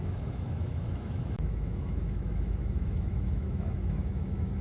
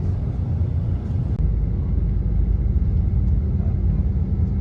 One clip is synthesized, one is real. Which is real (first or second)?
second